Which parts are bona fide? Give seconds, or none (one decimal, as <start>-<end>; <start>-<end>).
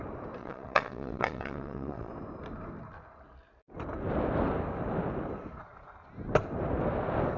0.0-0.4; 2.1-7.4